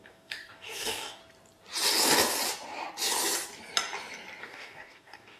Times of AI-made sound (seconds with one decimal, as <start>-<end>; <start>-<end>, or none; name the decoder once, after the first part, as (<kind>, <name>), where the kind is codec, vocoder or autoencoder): 0.0-1.2 (codec, DAC); 4.4-5.4